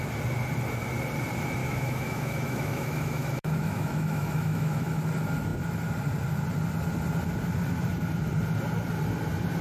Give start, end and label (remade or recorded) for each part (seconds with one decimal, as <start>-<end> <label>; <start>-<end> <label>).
0.0-1.6 recorded; 1.6-5.0 remade; 5.0-9.6 recorded